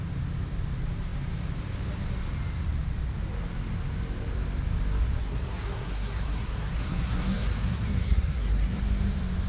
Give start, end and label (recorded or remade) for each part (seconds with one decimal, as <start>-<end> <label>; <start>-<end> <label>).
0.0-5.2 recorded; 5.2-8.8 remade; 8.8-9.5 recorded